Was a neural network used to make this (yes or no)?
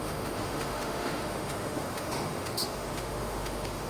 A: yes